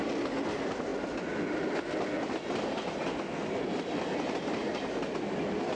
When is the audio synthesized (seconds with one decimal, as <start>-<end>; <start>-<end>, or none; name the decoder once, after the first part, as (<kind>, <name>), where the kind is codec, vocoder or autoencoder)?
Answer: none